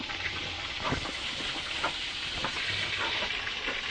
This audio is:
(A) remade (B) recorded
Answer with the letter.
A